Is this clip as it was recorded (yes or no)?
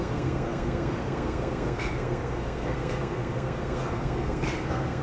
no